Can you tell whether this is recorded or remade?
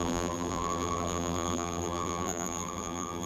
remade